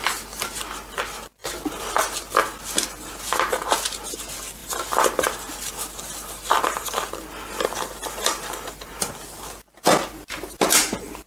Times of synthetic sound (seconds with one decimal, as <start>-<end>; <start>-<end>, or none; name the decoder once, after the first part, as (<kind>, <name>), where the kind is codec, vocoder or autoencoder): 1.4-1.9 (vocoder, BigVGAN v2); 4.6-9.1